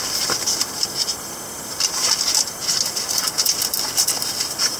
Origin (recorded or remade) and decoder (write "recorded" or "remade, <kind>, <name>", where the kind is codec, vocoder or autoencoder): recorded